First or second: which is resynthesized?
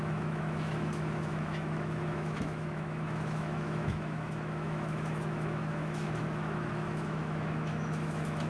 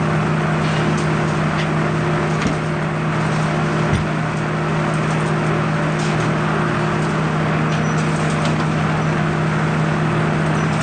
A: first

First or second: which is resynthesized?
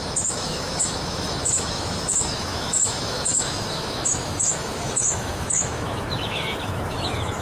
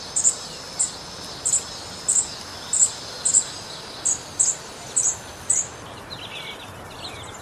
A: first